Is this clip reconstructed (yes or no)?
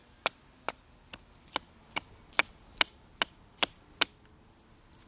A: no